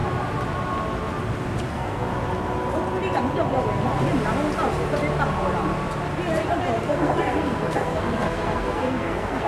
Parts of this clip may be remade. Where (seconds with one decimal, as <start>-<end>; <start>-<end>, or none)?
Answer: 1.7-2.1; 6.8-9.5